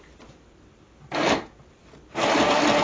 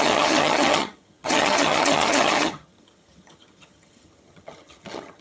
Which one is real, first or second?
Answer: first